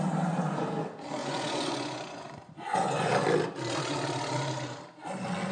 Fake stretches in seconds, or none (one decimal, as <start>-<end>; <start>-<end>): 1.2-3.1